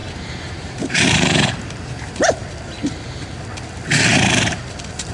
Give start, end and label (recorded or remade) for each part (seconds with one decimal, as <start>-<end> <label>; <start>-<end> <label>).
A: 0.0-2.5 remade; 2.5-4.1 recorded; 4.1-4.6 remade; 4.6-5.1 recorded